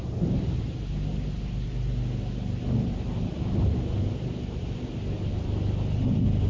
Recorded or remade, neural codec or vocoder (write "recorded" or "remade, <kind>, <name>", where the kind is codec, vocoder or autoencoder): recorded